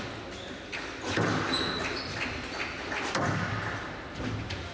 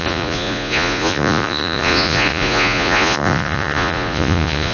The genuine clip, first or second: first